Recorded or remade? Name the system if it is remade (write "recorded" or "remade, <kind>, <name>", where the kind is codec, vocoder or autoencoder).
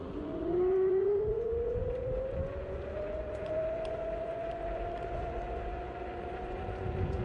remade, vocoder, Vocos